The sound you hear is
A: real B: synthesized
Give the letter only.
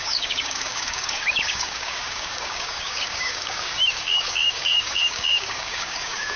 B